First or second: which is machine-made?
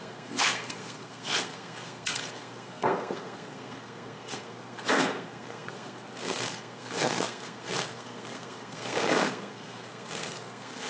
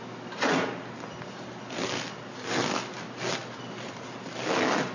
first